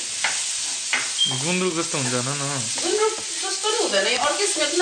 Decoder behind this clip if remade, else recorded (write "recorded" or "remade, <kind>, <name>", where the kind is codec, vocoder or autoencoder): recorded